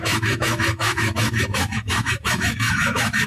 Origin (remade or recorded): remade